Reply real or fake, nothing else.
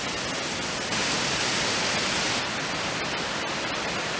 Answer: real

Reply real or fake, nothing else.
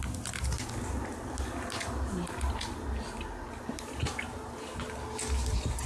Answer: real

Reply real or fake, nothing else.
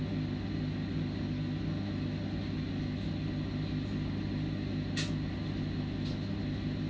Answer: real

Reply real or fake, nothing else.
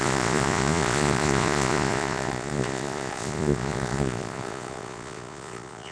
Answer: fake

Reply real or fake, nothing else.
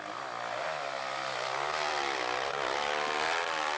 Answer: real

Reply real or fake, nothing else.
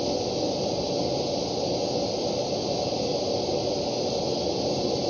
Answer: real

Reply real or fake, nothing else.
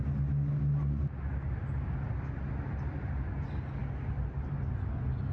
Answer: real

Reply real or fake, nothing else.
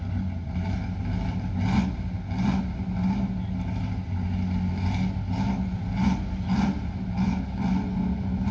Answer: real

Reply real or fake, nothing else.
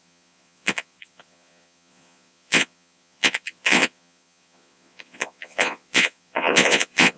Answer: fake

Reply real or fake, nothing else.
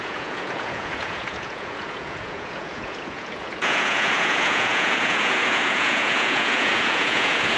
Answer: fake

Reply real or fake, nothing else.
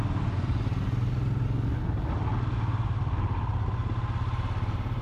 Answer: real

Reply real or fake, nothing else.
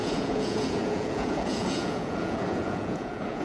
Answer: fake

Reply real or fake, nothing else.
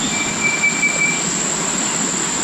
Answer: real